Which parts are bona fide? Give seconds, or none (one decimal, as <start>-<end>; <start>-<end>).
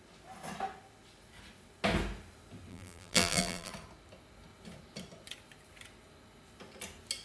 0.0-2.7; 3.7-7.2